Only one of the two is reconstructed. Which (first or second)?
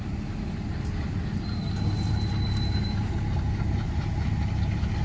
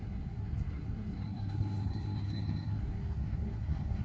second